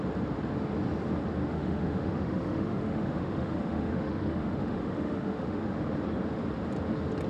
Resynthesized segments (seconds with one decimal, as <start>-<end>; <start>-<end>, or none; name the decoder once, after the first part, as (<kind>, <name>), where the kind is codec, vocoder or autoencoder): 1.4-5.8 (autoencoder, DAC-VAE)